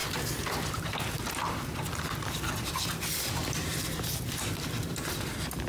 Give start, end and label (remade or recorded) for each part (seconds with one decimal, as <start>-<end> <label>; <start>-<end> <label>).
0.0-3.7 recorded; 3.7-5.7 remade